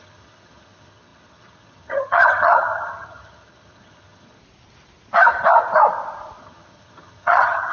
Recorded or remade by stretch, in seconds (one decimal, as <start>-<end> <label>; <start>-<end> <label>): 0.0-4.4 remade; 4.4-6.4 recorded; 6.4-7.7 remade